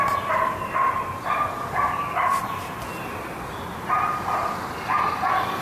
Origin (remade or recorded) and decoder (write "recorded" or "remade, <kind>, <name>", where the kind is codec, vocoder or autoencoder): recorded